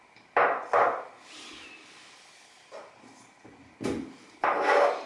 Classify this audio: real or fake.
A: real